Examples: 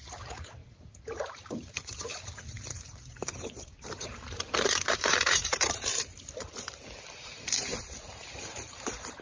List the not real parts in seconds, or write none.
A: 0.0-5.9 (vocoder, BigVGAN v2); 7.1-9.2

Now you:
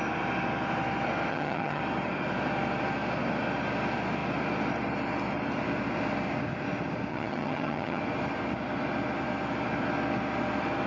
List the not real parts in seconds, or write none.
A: 1.3-1.8 (vocoder, HiFi-GAN); 7.1-8.0

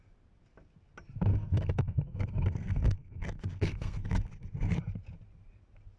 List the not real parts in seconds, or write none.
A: 1.3-4.3 (codec, SNAC)

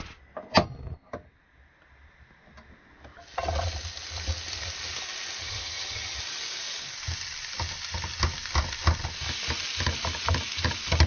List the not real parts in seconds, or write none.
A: 5.4-6.2 (vocoder, HiFi-GAN)

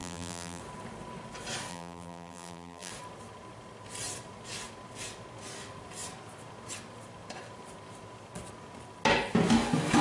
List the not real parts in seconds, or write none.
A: 0.0-0.6 (vocoder, BigVGAN v2); 1.7-2.9

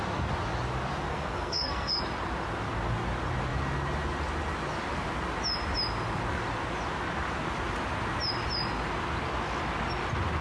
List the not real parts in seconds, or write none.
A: 1.1-2.0 (codec, SNAC)